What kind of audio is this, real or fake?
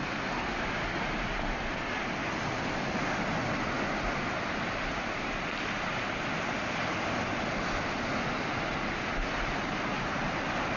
real